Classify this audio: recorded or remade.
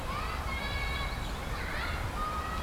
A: remade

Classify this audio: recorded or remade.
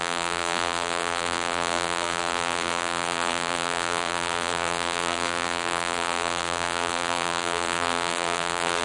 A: remade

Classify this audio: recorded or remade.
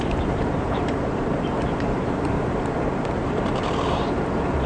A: remade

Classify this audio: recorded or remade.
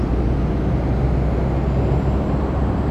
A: recorded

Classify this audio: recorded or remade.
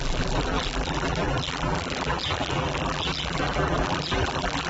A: remade